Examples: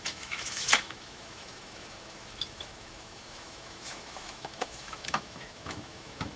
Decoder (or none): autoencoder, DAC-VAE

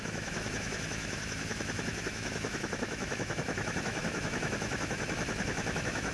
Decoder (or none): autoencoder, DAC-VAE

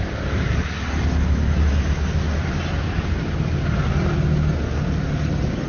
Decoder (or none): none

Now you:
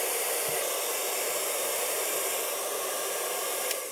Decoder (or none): none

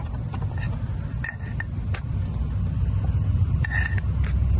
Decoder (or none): none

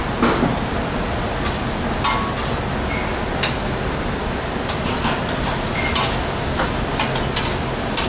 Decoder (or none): none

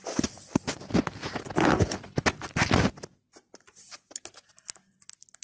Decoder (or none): none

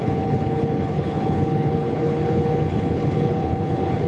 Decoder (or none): codec, HILCodec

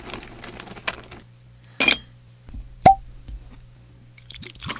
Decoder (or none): none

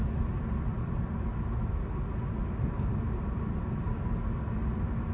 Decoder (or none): none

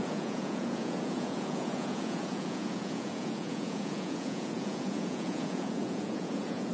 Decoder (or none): vocoder, Vocos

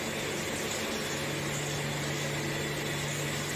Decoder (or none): none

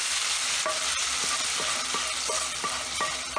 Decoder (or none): none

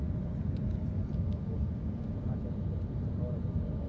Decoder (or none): none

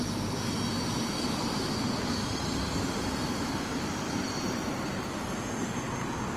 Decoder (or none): none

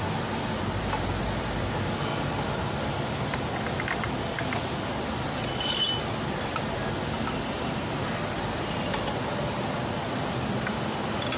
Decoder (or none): none